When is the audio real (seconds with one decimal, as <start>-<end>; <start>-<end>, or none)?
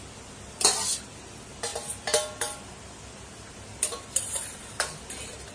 0.0-5.5